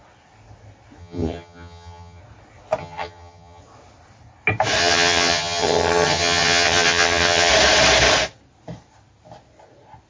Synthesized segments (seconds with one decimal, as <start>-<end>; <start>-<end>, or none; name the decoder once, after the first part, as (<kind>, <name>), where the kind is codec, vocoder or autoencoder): 1.0-2.2 (vocoder, HiFi-GAN); 2.8-3.6; 4.8-7.5